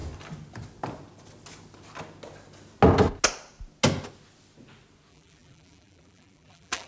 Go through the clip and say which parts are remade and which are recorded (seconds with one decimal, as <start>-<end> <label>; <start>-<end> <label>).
0.0-5.1 recorded; 5.1-6.9 remade

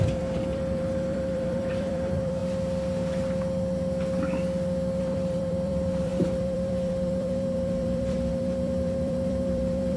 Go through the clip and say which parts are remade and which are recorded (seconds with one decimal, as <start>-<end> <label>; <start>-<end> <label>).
0.0-2.4 remade; 2.4-5.0 recorded; 5.0-10.0 remade

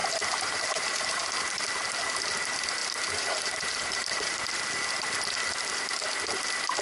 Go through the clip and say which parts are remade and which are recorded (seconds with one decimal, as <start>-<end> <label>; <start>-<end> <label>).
0.0-1.2 remade; 1.2-2.8 recorded; 2.8-4.4 remade; 4.4-6.8 recorded

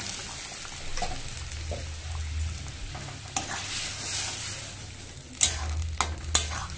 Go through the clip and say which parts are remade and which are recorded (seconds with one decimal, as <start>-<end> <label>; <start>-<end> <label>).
0.0-6.8 recorded

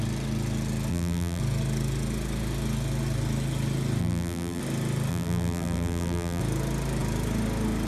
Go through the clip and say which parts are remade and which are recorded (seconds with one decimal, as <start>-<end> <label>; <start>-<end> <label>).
0.0-0.9 recorded; 0.9-1.4 remade; 1.4-4.0 recorded; 4.0-4.6 remade; 4.6-5.1 recorded; 5.1-6.4 remade; 6.4-7.9 recorded